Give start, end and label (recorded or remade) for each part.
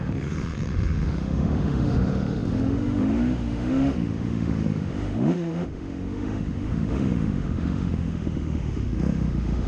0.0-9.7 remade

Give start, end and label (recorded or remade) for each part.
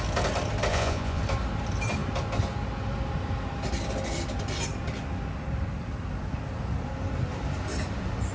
0.0-0.7 recorded; 0.7-1.2 remade; 1.2-8.3 recorded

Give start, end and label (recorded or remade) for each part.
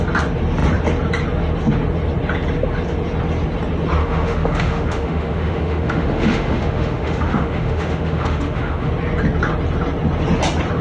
0.0-4.0 recorded; 4.0-8.9 remade; 8.9-10.8 recorded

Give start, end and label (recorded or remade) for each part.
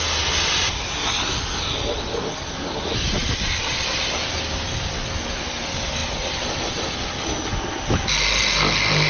0.0-9.1 recorded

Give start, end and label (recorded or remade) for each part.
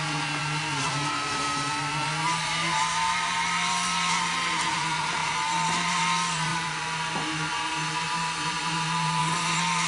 0.0-0.4 recorded; 0.4-4.8 remade; 4.8-5.2 recorded; 5.2-6.0 remade; 6.0-6.5 recorded; 6.5-9.2 remade; 9.2-9.9 recorded